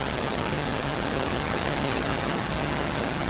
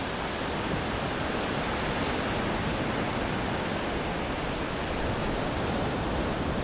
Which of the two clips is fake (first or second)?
first